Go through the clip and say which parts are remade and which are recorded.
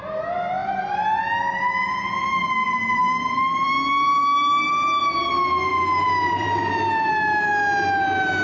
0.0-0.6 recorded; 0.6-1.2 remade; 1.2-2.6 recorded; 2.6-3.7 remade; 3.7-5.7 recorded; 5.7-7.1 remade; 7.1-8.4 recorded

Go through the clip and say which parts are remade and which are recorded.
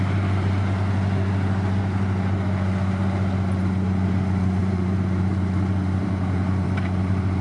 0.0-4.6 recorded; 4.6-7.4 remade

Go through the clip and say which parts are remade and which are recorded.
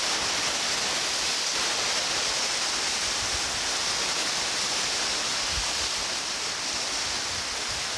0.0-8.0 recorded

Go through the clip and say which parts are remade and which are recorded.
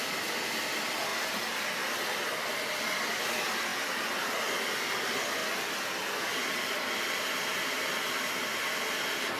0.0-1.1 remade; 1.1-1.7 recorded; 1.7-3.7 remade; 3.7-4.3 recorded; 4.3-5.4 remade; 5.4-8.4 recorded; 8.4-9.4 remade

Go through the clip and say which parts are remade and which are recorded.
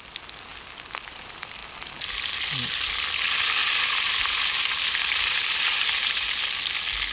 0.0-3.6 recorded; 3.6-6.4 remade; 6.4-7.1 recorded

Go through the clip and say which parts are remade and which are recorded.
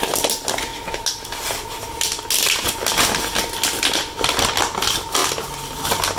0.0-6.2 recorded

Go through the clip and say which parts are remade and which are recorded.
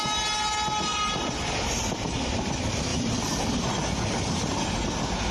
0.0-0.9 recorded; 0.9-2.4 remade; 2.4-2.9 recorded; 2.9-4.7 remade; 4.7-5.3 recorded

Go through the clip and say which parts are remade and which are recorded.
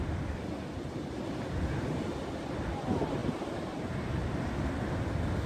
0.0-5.5 remade